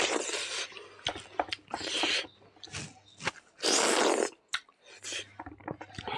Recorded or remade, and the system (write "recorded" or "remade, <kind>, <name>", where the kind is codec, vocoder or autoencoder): recorded